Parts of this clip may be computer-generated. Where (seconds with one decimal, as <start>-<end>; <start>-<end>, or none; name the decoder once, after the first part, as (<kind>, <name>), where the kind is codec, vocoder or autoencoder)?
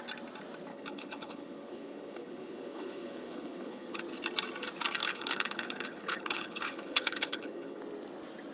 0.7-4.0 (codec, HILCodec); 5.0-7.8